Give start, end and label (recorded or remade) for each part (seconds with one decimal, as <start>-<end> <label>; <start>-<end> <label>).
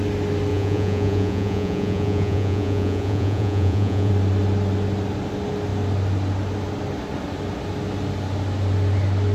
0.0-0.5 recorded; 0.5-4.1 remade; 4.1-9.3 recorded